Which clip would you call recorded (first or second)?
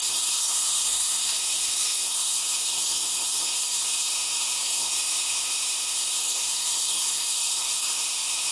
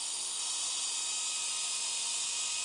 second